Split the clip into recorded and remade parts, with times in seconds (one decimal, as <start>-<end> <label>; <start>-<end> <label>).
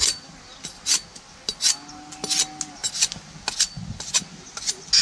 0.0-5.0 recorded